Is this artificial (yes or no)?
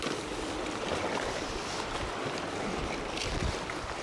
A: no